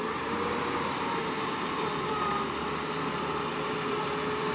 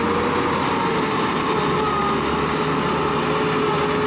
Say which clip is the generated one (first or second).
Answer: first